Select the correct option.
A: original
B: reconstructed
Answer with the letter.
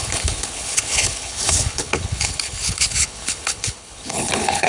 B